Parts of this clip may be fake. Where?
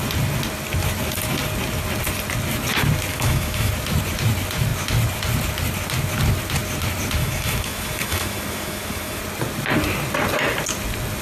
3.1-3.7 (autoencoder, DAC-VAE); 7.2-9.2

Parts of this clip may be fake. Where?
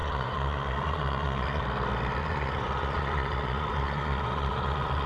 0.0-1.6 (vocoder, Vocos); 2.2-5.1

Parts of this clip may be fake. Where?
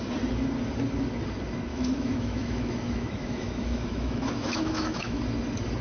1.7-5.2 (autoencoder, DAC-VAE)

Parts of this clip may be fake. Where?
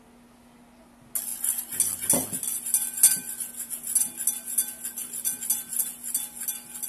none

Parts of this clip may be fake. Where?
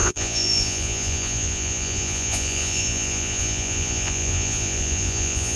0.0-5.6 (vocoder, Vocos)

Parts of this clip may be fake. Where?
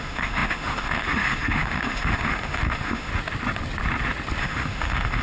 0.0-3.1 (autoencoder, DAC-VAE); 4.4-5.2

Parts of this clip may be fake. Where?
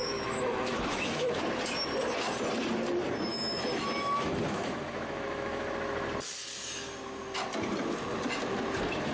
0.0-1.4 (autoencoder, DAC-VAE); 3.3-5.7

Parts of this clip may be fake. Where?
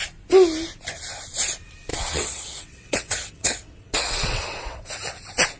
1.9-4.9 (vocoder, WaveNeXt)